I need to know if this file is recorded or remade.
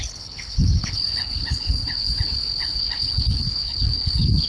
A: remade